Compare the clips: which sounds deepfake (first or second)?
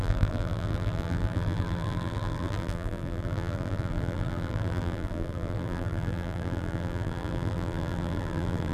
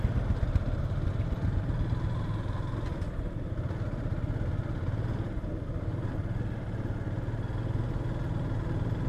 first